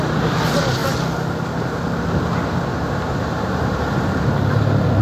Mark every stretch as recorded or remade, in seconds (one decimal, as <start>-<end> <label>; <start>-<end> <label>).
0.0-0.8 remade; 0.8-3.2 recorded; 3.2-5.0 remade